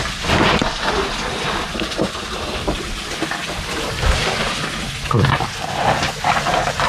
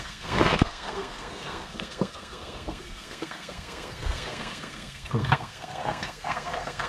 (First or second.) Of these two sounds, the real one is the first